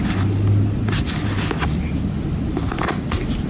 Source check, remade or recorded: recorded